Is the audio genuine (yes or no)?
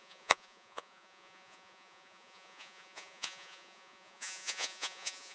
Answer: no